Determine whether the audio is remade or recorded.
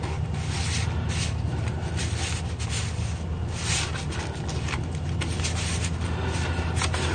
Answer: recorded